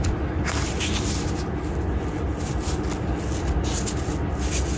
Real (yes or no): yes